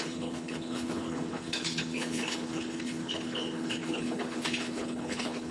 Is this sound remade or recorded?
remade